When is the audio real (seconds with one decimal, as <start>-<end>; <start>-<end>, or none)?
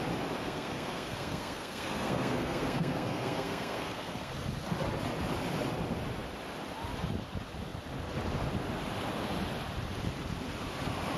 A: 0.0-0.4; 4.3-11.2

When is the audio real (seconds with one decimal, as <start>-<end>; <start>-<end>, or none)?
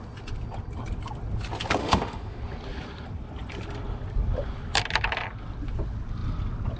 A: 0.0-1.8; 2.4-6.8